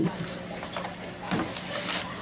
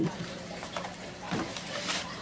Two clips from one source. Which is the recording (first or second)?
first